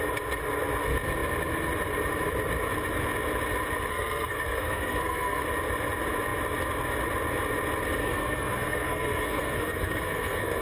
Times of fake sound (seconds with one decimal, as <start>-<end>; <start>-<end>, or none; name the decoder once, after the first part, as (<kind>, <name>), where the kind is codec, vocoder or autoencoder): 3.9-5.4 (codec, SNAC); 8.0-10.6